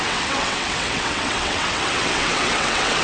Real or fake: fake